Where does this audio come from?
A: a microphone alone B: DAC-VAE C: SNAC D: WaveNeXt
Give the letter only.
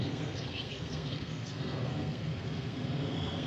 C